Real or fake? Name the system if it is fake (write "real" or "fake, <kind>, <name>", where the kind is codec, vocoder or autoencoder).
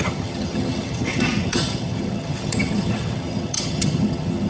fake, vocoder, HiFi-GAN